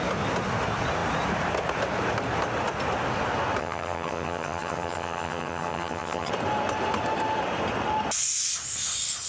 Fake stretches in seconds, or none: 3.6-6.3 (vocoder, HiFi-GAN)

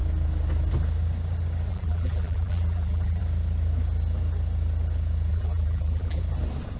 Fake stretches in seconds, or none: 1.7-3.2 (vocoder, BigVGAN v2); 5.3-6.2

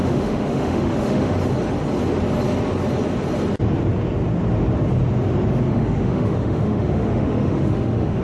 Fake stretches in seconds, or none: 0.0-1.3 (autoencoder, DAC-VAE); 5.7-8.2

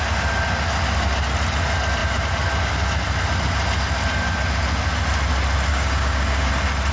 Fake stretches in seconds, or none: 5.7-6.5 (codec, DAC)

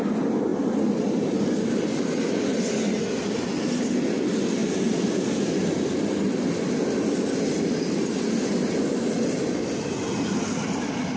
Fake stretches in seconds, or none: none

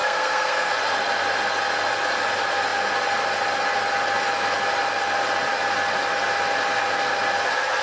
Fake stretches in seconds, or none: 0.0-0.7 (codec, SNAC)

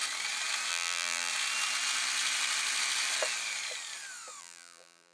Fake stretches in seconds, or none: 0.7-1.3 (vocoder, BigVGAN v2); 4.4-5.1